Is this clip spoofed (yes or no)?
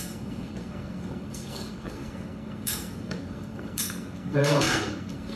yes